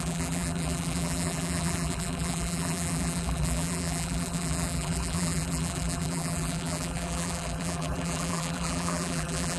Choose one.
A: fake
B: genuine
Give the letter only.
A